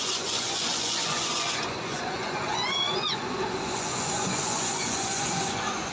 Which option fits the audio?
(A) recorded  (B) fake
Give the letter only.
B